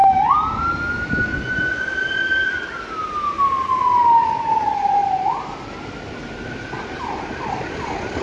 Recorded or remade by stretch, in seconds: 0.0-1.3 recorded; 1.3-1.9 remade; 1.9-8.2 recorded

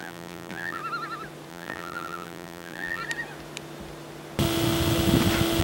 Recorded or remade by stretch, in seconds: 0.0-0.8 remade; 0.8-1.5 recorded; 1.5-3.0 remade; 3.0-5.6 recorded

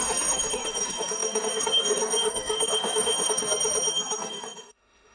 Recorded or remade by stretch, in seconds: 0.0-5.1 remade

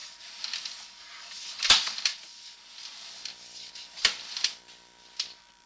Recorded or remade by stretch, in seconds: 0.0-5.7 recorded

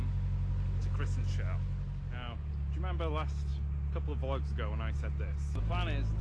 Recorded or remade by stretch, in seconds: 0.0-6.2 recorded

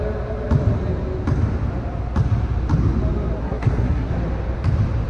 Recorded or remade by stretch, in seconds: 0.0-3.4 recorded; 3.4-4.1 remade; 4.1-5.1 recorded

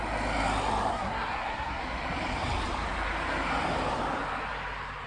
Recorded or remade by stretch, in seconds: 0.0-0.9 recorded; 0.9-1.8 remade; 1.8-5.1 recorded

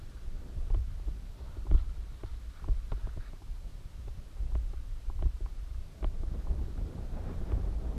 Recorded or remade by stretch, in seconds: 0.0-2.3 remade; 2.3-3.2 recorded; 3.2-3.7 remade; 3.7-6.3 recorded; 6.3-8.0 remade